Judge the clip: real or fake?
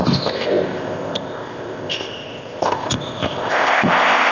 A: fake